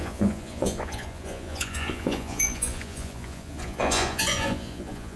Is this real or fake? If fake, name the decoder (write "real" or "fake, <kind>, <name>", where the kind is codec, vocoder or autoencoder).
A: fake, vocoder, Vocos